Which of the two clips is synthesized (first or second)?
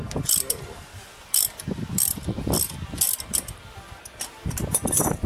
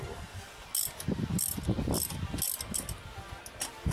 first